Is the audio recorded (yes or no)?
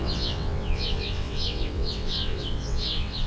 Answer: no